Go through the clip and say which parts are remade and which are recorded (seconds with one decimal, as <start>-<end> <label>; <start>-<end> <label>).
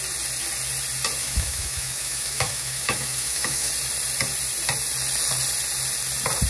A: 0.0-1.2 recorded; 1.2-3.7 remade; 3.7-6.5 recorded